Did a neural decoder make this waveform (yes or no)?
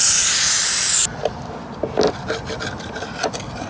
no